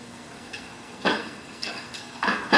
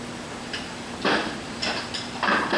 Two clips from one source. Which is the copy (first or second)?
first